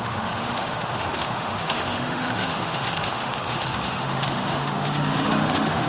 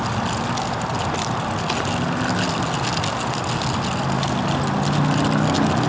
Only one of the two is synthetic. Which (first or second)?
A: first